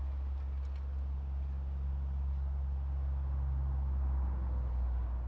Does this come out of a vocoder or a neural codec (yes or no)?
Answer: no